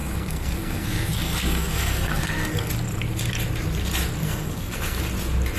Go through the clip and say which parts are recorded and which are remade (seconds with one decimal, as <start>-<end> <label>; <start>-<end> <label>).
0.0-2.7 remade; 2.7-4.2 recorded; 4.2-5.0 remade; 5.0-5.6 recorded